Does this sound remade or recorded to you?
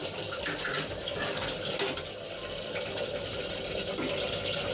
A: recorded